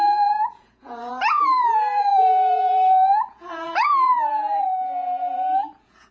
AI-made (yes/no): yes